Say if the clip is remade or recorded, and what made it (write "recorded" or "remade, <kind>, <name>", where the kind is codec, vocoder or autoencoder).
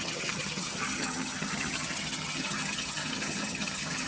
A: remade, vocoder, HiFi-GAN